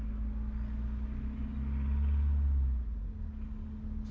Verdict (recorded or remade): recorded